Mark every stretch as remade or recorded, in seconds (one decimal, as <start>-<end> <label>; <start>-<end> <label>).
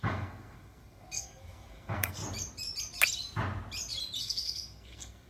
0.0-2.2 remade; 2.2-4.2 recorded; 4.2-5.3 remade